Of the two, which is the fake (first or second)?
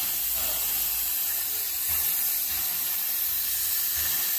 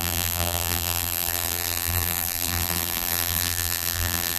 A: second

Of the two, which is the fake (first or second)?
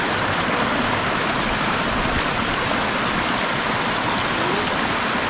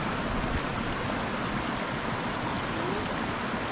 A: first